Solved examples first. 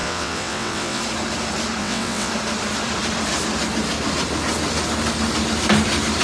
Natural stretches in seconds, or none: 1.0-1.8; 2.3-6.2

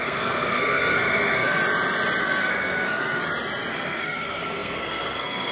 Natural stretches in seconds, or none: 1.6-2.2; 3.2-3.7

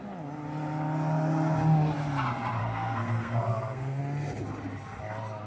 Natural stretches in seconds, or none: 0.0-2.6; 4.0-5.5

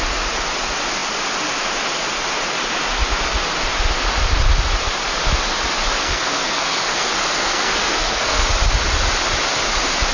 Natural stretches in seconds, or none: 0.0-6.0; 8.5-10.1

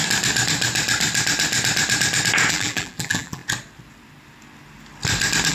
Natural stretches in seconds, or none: 0.0-2.5; 3.4-5.5